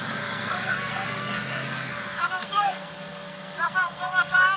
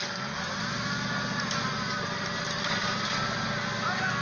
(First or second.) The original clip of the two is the second